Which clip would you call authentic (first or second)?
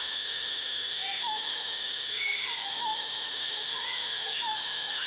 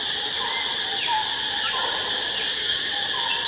second